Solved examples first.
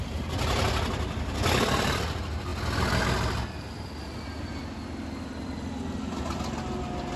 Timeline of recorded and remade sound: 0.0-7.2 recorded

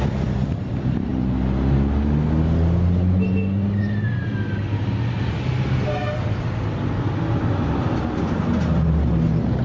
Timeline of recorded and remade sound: 0.0-9.6 recorded